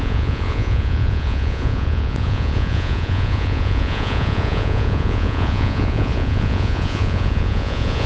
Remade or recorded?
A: remade